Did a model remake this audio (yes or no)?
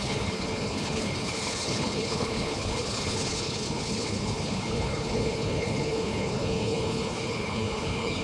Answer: yes